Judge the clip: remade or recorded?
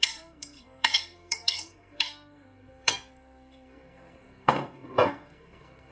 remade